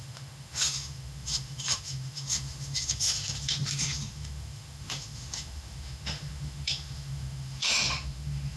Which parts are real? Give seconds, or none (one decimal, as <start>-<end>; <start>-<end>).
none